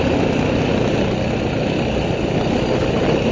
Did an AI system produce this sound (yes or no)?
no